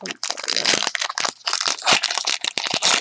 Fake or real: real